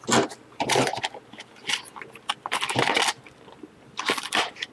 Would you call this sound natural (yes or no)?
yes